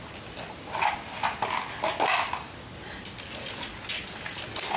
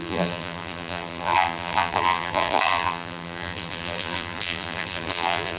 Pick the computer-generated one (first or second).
second